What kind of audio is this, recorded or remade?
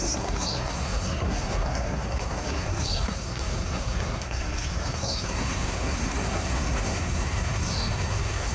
remade